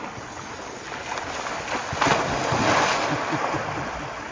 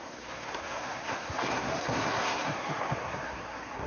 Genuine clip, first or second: first